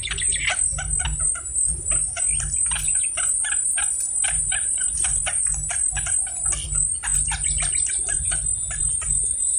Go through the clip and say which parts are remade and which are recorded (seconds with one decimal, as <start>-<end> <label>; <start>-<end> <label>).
0.0-9.6 recorded